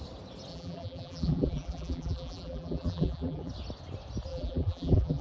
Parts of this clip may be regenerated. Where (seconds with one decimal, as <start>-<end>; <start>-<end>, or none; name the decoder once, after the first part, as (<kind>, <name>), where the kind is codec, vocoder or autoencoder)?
0.5-3.5 (vocoder, BigVGAN v2); 4.3-5.2